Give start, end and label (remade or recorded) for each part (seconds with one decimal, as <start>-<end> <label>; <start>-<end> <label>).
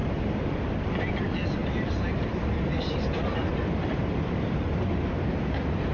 0.0-1.6 recorded; 1.6-5.1 remade; 5.1-5.9 recorded